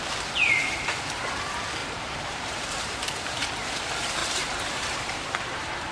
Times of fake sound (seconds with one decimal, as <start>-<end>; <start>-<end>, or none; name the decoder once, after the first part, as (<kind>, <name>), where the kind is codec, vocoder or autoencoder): 1.8-3.0 (vocoder, BigVGAN v2); 4.2-5.9

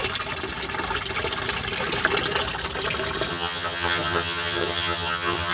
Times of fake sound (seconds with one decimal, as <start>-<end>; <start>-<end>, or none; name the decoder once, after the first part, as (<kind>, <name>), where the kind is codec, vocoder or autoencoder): 3.3-5.5 (vocoder, HiFi-GAN)

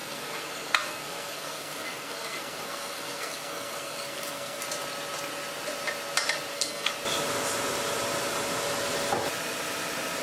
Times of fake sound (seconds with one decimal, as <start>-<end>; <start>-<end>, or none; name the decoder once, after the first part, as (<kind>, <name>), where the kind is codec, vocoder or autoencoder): 0.0-4.6 (codec, SNAC); 6.5-6.9

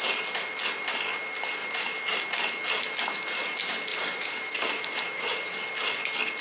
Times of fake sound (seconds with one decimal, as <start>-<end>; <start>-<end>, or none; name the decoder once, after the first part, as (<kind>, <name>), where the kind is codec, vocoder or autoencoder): 1.6-2.2 (vocoder, BigVGAN v2); 3.9-5.7

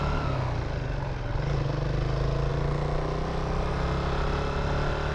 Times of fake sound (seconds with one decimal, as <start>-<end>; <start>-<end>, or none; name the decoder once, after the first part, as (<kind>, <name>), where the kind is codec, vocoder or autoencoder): none

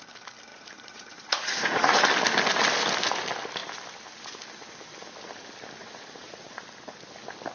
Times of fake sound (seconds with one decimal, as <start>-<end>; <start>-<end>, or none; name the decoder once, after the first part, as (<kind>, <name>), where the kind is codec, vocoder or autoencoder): 0.5-2.0 (vocoder, Vocos); 5.8-6.5